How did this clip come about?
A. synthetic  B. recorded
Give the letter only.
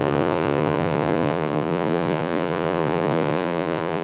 A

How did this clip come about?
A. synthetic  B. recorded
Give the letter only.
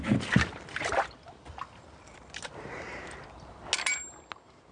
B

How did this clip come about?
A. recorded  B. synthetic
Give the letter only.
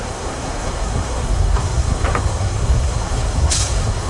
B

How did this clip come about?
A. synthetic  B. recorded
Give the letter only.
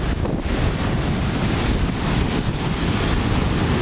B